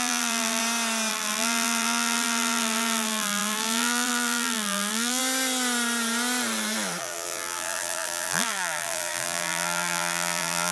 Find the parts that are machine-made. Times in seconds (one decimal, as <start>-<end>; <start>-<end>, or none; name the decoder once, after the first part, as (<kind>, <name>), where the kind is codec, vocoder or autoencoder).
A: 0.0-0.6 (vocoder, BigVGAN v2); 1.1-5.2; 7.0-10.7